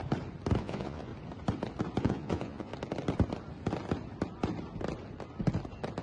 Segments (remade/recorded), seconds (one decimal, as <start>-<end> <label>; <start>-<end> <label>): 0.0-0.6 recorded; 0.6-1.1 remade; 1.1-2.0 recorded; 2.0-2.7 remade; 2.7-6.0 recorded

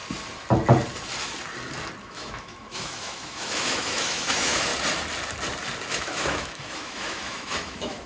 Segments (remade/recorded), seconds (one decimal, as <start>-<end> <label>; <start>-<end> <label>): 0.0-2.0 recorded; 2.0-4.7 remade; 4.7-5.9 recorded; 5.9-8.1 remade

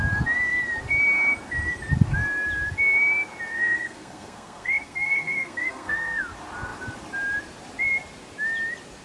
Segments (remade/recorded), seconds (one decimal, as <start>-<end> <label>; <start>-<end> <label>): 0.0-3.5 recorded; 3.5-6.2 remade; 6.2-9.0 recorded

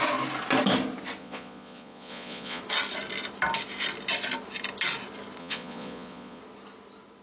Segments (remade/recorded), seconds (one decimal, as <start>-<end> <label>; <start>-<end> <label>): 0.0-1.2 recorded; 1.2-2.6 remade; 2.6-5.4 recorded; 5.4-6.4 remade; 6.4-7.2 recorded

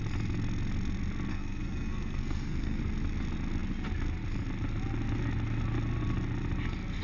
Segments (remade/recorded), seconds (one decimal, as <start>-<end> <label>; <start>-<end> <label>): 0.0-1.3 recorded; 1.3-2.8 remade; 2.8-7.0 recorded

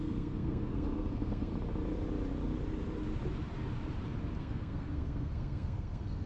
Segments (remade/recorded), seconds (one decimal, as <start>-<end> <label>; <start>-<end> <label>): 0.0-1.5 remade; 1.5-4.4 recorded; 4.4-6.3 remade

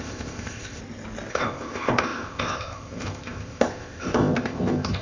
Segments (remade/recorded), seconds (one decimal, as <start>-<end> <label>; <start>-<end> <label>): 0.0-0.8 remade; 0.8-1.3 recorded; 1.3-5.0 remade

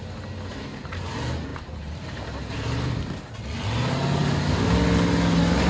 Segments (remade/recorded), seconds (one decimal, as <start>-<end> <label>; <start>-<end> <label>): 0.0-1.5 recorded; 1.5-3.0 remade; 3.0-5.7 recorded